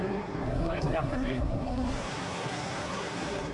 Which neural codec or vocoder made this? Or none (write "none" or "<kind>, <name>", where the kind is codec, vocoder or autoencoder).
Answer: codec, SNAC